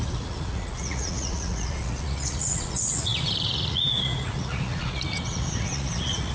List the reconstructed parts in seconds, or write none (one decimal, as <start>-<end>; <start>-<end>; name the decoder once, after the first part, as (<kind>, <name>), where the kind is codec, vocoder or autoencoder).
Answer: 0.0-6.3 (vocoder, Vocos)